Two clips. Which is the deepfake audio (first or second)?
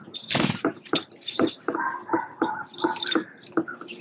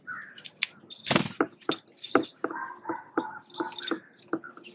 first